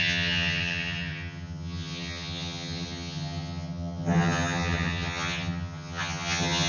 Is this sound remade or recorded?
remade